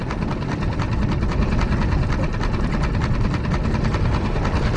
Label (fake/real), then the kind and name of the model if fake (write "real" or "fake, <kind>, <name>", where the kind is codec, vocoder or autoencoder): real